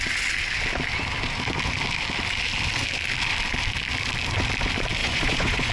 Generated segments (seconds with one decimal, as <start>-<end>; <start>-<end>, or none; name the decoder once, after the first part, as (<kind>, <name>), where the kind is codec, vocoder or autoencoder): 5.0-5.7 (vocoder, Vocos)